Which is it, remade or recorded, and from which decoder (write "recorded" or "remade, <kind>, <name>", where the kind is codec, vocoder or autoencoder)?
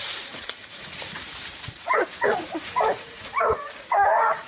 remade, vocoder, Vocos